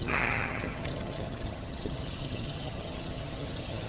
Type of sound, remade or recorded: remade